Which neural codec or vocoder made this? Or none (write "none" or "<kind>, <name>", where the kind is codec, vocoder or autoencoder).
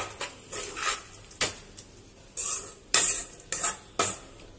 none